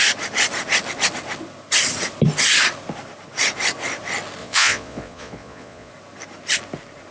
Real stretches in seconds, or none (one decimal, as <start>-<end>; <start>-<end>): 0.0-4.4; 5.9-7.1